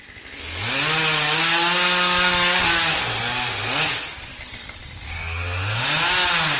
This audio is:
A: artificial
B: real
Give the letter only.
B